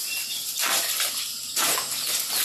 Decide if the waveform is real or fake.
real